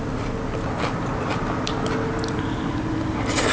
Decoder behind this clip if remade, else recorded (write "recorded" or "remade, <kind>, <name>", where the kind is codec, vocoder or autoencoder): recorded